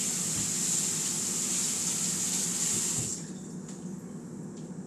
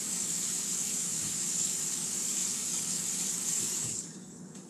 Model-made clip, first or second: second